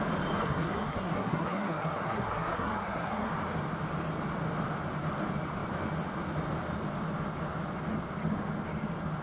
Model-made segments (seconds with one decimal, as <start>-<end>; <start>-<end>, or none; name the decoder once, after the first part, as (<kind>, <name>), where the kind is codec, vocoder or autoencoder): 0.4-3.3 (codec, SNAC)